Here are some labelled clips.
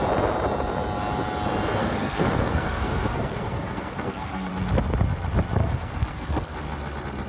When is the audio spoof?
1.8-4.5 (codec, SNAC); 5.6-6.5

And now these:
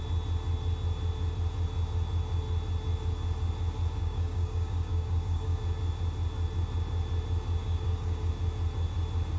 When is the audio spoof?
4.0-5.6 (codec, DAC); 7.6-8.3

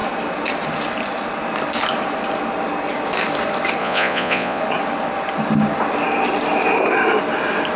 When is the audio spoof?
3.8-4.6 (vocoder, Vocos)